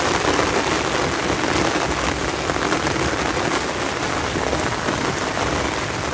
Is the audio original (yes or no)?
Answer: yes